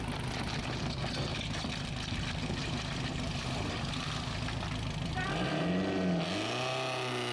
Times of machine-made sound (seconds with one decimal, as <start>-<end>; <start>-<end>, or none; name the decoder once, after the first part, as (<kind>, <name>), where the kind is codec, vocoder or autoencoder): 1.3-5.6 (vocoder, BigVGAN v2)